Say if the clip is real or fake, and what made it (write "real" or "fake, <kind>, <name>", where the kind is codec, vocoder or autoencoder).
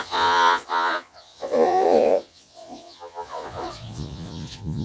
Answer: fake, vocoder, Vocos